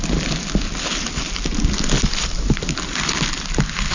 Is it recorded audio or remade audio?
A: recorded